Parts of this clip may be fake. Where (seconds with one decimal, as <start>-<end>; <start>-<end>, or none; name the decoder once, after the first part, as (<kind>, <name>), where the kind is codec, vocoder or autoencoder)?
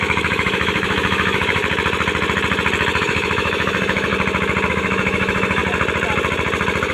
0.0-1.6 (autoencoder, DAC-VAE); 3.0-4.1; 4.7-5.6